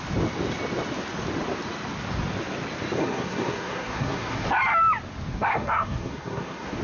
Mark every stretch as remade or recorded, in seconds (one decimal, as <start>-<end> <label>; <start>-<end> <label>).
0.0-3.0 recorded; 3.0-4.5 remade; 4.5-5.3 recorded; 5.3-6.8 remade